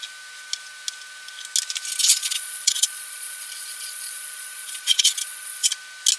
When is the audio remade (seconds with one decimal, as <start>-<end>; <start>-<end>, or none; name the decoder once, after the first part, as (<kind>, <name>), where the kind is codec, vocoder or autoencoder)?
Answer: 2.0-5.7 (vocoder, Vocos)

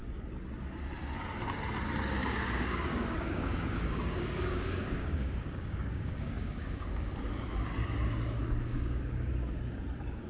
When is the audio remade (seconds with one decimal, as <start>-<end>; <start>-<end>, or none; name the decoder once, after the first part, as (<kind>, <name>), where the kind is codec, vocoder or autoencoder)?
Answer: 2.2-7.2 (codec, DAC); 8.4-9.3